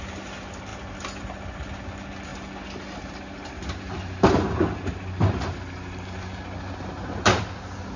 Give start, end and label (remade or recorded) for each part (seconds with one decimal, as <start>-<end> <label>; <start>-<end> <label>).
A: 0.0-8.0 recorded